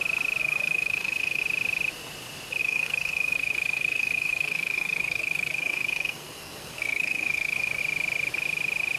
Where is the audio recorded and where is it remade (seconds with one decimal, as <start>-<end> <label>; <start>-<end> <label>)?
0.0-0.4 recorded; 0.4-1.4 remade; 1.4-2.6 recorded; 2.6-7.8 remade; 7.8-9.0 recorded

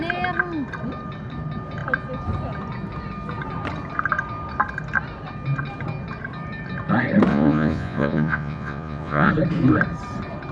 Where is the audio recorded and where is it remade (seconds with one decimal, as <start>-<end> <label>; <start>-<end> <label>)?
0.0-7.3 recorded; 7.3-9.3 remade; 9.3-10.5 recorded